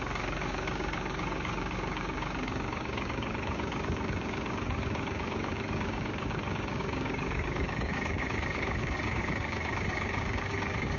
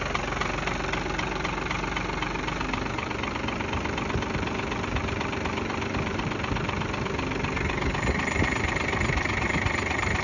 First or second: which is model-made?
first